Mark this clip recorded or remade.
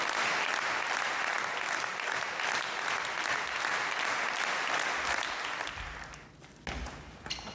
recorded